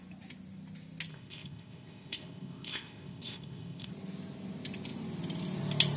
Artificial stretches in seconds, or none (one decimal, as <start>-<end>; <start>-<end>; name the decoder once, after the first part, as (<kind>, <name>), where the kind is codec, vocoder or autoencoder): 1.1-3.9 (codec, ZipCodec)